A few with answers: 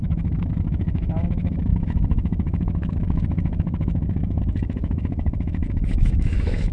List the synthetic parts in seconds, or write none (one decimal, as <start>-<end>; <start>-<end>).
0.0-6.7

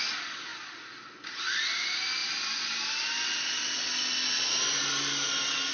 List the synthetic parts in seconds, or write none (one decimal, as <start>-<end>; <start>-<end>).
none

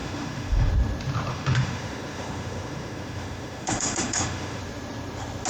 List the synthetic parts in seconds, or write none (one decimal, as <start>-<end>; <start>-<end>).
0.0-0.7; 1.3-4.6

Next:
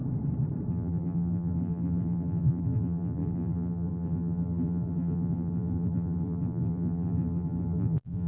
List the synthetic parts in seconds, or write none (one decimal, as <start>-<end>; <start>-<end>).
0.7-8.3

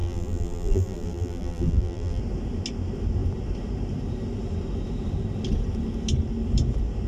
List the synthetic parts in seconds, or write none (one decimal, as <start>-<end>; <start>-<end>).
0.0-2.2

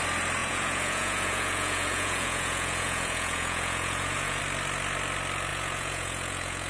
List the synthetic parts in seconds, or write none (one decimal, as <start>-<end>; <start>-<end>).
0.4-4.4; 5.5-6.7

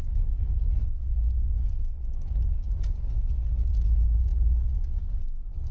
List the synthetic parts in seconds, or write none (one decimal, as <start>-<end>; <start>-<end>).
none